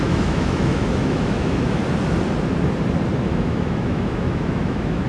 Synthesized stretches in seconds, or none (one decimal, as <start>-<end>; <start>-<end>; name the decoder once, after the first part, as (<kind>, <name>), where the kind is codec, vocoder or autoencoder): 0.0-1.8 (autoencoder, DAC-VAE); 3.3-5.1